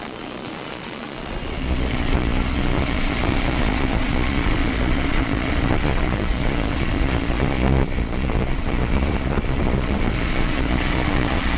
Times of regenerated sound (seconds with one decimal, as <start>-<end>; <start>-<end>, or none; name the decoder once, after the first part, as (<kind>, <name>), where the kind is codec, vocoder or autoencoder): 0.0-11.6 (vocoder, Vocos)